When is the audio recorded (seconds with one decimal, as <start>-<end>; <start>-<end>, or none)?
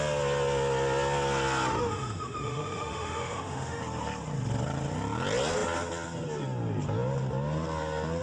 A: 0.0-1.7; 3.8-8.2